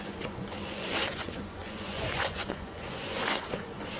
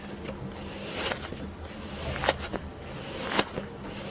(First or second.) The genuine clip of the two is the second